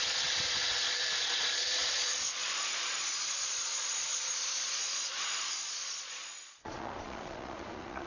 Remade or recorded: remade